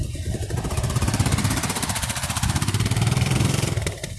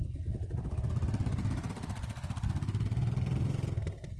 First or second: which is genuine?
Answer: second